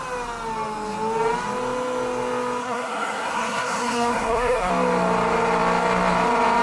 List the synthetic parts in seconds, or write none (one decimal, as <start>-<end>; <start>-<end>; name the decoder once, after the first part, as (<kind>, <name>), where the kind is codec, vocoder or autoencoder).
2.6-4.7 (codec, SNAC)